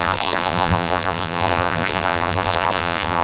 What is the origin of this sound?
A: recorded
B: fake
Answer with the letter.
B